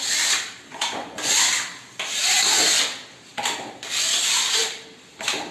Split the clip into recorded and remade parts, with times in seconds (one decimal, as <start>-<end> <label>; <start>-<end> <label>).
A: 0.0-0.7 recorded; 0.7-1.4 remade; 1.4-5.5 recorded